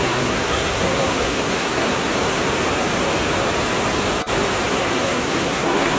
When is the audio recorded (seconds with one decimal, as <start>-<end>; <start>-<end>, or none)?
2.1-4.7